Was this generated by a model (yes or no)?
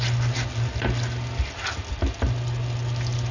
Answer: no